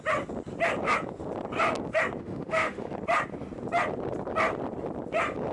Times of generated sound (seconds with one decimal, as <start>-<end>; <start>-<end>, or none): 2.2-2.9